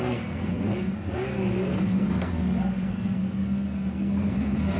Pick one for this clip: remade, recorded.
remade